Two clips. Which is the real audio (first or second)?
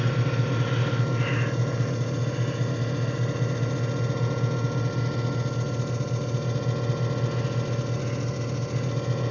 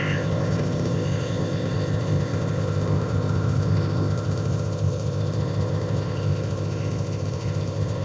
first